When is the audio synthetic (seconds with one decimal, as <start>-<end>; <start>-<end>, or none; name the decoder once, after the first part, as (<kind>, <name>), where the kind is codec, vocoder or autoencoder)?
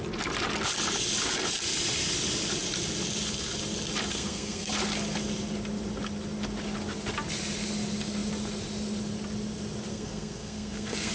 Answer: 4.1-4.7 (codec, SNAC); 9.9-11.1